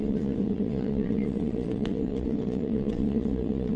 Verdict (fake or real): fake